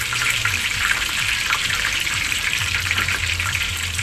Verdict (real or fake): fake